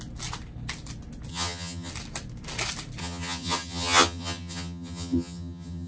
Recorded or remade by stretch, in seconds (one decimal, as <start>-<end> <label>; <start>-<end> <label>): 0.0-1.3 recorded; 1.3-1.9 remade; 1.9-3.0 recorded; 3.0-5.9 remade